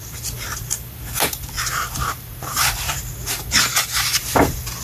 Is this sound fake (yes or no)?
yes